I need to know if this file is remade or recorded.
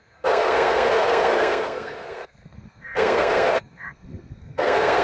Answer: remade